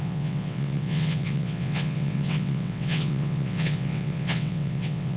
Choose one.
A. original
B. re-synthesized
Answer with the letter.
B